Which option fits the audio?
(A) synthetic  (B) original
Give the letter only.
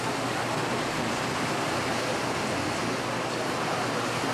B